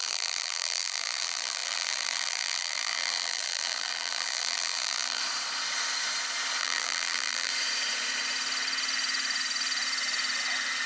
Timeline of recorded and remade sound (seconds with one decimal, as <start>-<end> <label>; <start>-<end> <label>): 0.0-5.2 remade; 5.2-6.6 recorded; 6.6-7.5 remade; 7.5-10.9 recorded